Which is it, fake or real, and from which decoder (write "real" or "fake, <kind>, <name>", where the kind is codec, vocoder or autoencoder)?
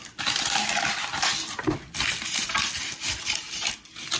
real